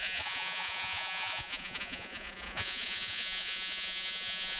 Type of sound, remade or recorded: remade